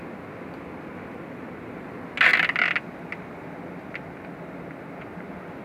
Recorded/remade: recorded